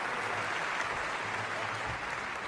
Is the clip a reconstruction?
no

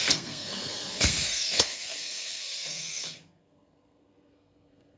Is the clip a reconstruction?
yes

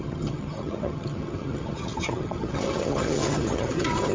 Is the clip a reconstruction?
yes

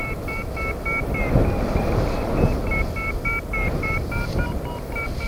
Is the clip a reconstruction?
no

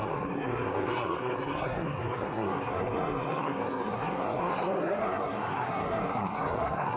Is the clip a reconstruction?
yes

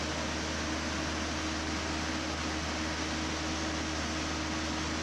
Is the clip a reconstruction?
no